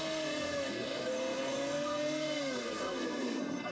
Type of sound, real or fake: fake